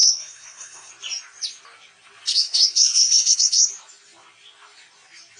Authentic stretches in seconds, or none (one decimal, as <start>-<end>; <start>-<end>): 0.9-2.3; 3.7-5.4

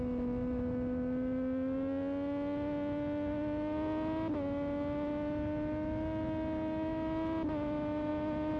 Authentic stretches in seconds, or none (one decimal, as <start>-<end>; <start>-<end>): 0.0-8.6

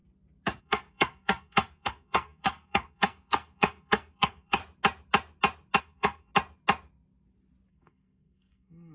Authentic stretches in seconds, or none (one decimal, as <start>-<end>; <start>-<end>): 0.0-0.6; 4.6-5.8; 6.3-7.7

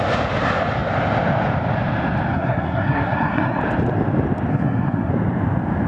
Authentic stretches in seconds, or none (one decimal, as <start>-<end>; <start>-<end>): 0.0-2.3; 3.6-4.5; 5.1-5.9